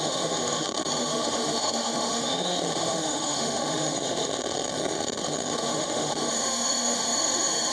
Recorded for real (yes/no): no